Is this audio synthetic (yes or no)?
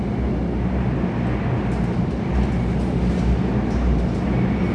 no